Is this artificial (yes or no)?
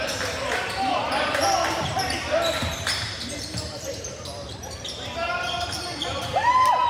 yes